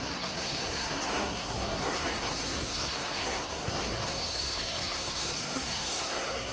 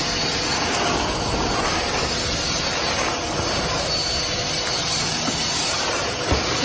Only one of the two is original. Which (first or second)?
second